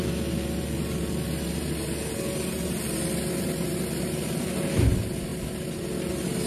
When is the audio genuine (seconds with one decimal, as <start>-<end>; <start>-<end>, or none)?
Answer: 0.0-6.5